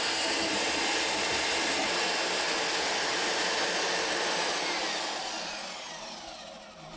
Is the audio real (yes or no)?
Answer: yes